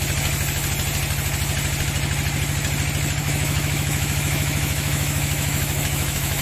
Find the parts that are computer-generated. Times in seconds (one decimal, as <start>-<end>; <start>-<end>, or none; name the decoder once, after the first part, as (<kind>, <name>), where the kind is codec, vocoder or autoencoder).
3.2-6.4 (autoencoder, DAC-VAE)